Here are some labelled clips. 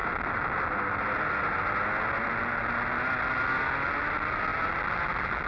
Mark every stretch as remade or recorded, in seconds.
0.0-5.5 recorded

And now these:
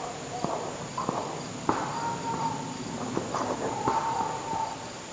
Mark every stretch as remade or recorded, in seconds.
0.0-5.1 recorded